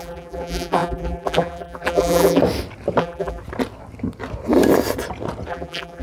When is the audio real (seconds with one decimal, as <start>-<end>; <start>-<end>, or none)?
2.4-3.0; 3.4-5.5